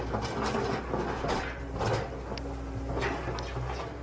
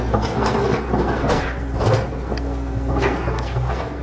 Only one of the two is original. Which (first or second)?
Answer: first